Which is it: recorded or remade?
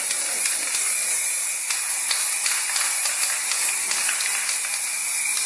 recorded